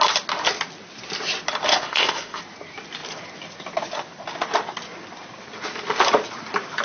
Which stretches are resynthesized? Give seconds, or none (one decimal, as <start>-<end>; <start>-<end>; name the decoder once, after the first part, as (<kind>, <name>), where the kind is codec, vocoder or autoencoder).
1.7-2.4 (codec, ZipCodec)